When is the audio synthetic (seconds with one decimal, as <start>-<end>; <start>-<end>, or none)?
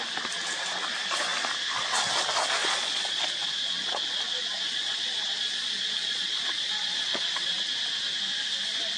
2.6-4.1; 4.5-7.5